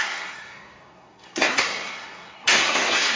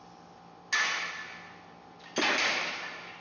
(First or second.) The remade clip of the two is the first